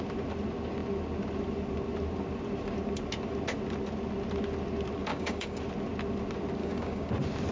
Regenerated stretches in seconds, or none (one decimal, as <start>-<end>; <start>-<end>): 5.1-5.6; 6.6-7.1